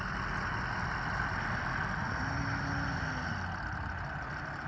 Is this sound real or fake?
real